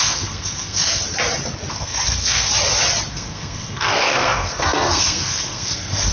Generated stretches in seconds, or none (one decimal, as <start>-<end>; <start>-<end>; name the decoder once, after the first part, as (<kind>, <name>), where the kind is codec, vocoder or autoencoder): 0.0-1.0 (codec, SNAC); 1.7-2.5; 3.1-6.1